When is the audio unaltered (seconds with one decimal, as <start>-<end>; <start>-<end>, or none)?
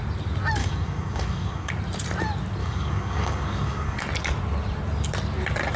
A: 0.0-0.6; 1.7-2.6; 4.0-5.8